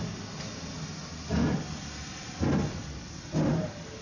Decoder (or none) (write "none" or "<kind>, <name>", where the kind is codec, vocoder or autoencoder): none